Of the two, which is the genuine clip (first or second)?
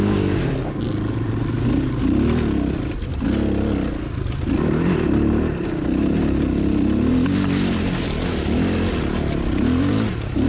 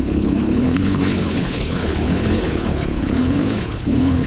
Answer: first